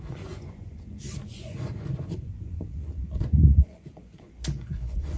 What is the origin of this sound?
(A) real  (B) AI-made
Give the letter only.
B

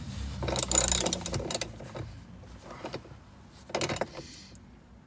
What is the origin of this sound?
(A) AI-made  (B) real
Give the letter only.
B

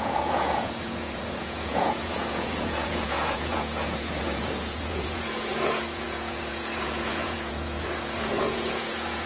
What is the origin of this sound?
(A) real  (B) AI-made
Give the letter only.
B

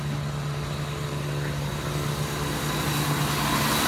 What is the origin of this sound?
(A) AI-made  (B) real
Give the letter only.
B